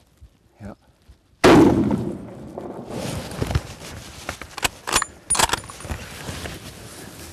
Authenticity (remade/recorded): recorded